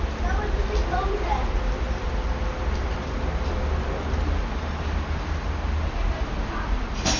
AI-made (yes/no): no